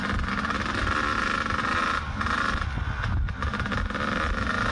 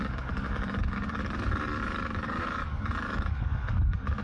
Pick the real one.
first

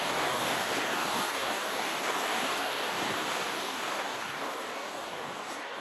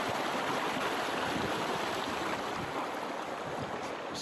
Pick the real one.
second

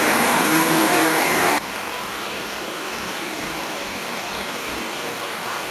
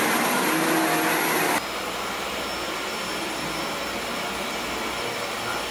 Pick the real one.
second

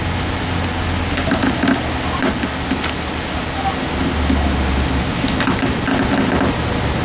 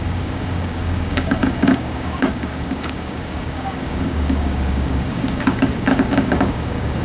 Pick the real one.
first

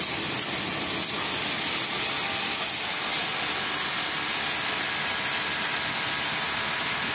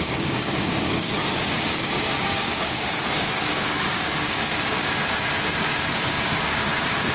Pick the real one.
first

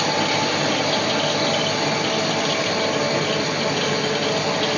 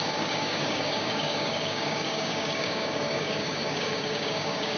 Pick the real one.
first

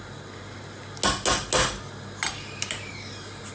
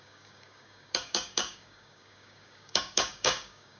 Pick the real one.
first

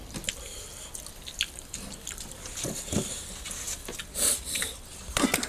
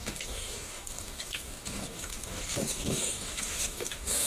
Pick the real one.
first